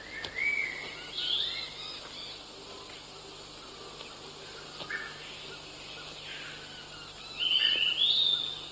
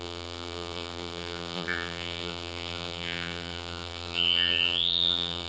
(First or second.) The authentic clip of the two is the first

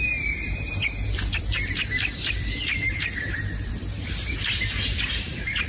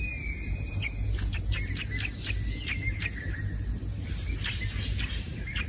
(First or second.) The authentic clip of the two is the second